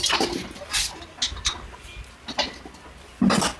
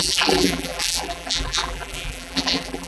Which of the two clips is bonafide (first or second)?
first